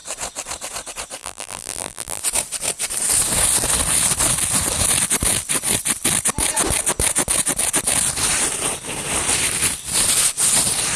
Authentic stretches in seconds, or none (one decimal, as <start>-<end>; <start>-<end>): 0.0-1.2; 2.2-11.0